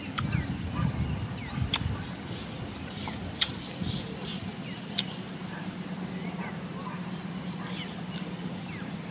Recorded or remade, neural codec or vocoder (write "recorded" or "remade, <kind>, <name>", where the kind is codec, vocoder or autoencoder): recorded